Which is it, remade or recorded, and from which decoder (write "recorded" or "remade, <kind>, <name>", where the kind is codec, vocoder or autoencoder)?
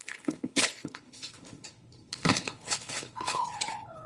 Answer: remade, codec, HILCodec